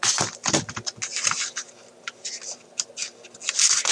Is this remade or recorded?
recorded